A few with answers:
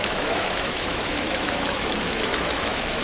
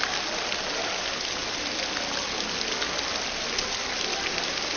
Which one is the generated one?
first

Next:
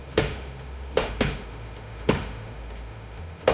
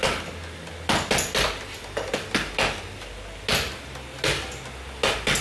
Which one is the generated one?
first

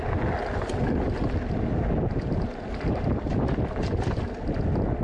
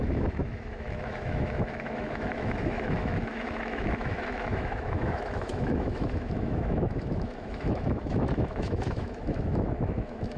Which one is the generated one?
second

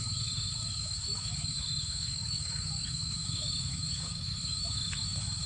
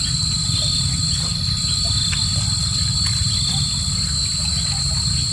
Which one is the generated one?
first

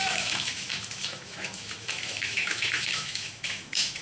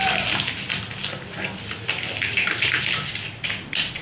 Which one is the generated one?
first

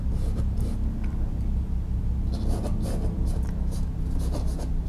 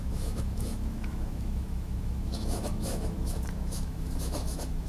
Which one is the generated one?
second